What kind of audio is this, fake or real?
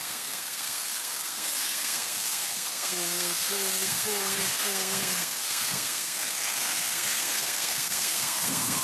fake